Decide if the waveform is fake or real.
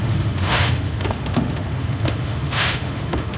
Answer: fake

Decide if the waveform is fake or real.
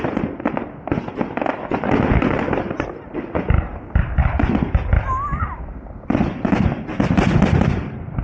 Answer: real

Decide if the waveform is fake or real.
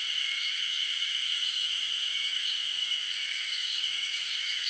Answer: fake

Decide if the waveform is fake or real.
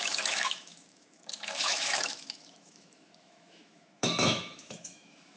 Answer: fake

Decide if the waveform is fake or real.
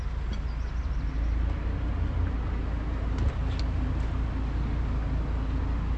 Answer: real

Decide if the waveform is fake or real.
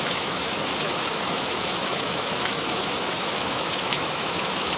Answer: fake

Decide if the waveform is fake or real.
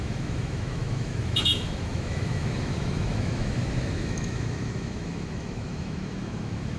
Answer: fake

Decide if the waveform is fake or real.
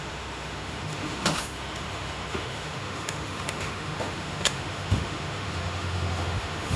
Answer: fake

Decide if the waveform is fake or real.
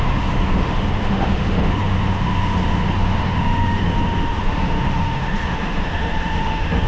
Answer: fake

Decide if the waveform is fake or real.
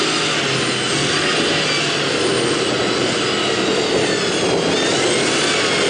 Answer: real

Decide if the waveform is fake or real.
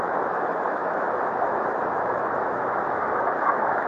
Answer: fake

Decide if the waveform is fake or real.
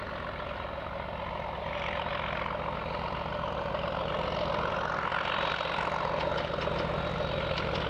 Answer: real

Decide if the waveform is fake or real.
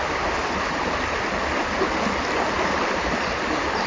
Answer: real